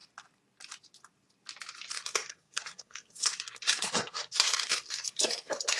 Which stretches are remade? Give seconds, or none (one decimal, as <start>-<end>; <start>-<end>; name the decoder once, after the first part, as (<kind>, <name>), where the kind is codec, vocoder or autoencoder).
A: 1.9-5.8 (codec, SNAC)